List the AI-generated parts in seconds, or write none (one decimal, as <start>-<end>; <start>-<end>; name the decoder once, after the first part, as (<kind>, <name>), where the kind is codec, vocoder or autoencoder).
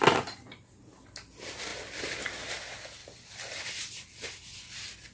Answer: 3.0-3.7 (vocoder, BigVGAN v2)